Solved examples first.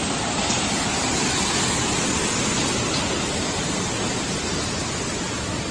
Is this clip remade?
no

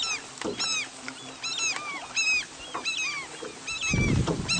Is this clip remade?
no